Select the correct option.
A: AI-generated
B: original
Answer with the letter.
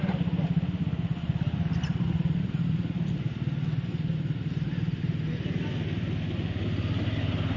B